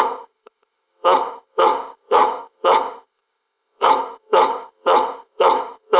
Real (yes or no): no